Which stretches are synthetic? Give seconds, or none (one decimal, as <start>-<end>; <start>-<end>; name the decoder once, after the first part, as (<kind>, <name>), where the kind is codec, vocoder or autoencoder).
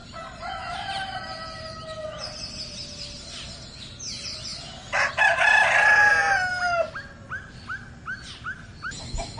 0.0-2.5 (vocoder, BigVGAN v2)